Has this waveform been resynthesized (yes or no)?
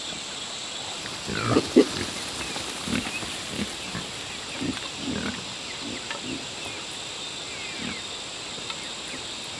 no